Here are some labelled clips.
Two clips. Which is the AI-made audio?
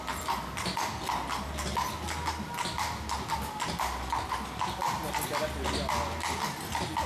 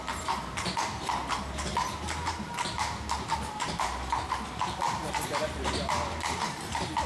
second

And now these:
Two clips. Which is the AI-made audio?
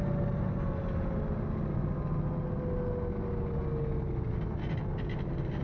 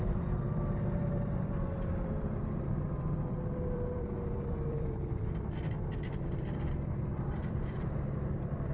second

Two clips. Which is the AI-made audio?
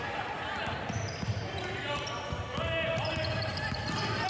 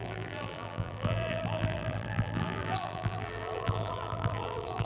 second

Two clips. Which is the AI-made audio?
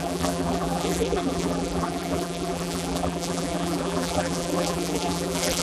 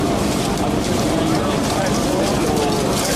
first